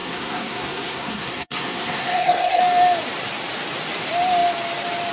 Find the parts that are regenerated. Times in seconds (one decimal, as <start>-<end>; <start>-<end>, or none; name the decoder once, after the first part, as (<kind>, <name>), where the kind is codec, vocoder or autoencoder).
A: 0.0-2.6 (codec, SNAC)